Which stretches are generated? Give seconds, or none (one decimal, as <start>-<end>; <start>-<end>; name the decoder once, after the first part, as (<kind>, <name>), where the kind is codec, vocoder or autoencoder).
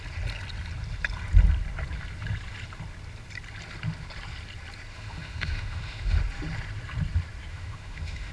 4.9-6.2 (autoencoder, DAC-VAE); 7.5-8.3